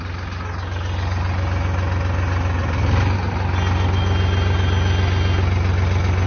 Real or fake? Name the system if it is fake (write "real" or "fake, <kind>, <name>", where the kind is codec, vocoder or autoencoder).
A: real